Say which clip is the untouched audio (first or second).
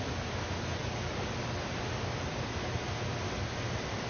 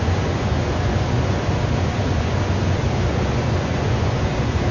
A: first